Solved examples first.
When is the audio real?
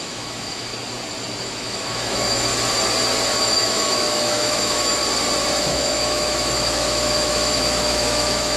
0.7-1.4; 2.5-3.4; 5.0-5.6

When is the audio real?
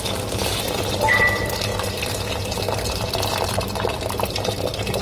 0.0-5.0